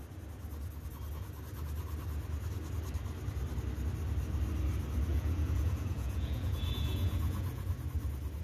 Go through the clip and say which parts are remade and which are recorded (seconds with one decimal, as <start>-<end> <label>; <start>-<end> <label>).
0.0-5.1 recorded; 5.1-7.6 remade; 7.6-8.4 recorded